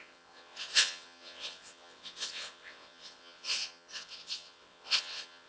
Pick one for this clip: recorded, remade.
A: remade